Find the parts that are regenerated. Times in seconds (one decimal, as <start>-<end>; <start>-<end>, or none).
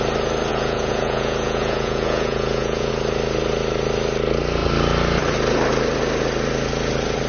0.5-2.9